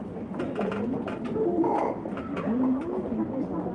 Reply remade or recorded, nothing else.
recorded